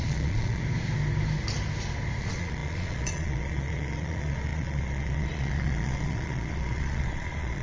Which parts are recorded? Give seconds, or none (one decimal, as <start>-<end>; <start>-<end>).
0.6-2.2